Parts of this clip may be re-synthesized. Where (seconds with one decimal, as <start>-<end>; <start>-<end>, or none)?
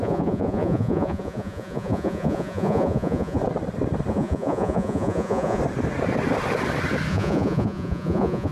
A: 0.0-3.4; 4.1-5.6; 7.1-8.5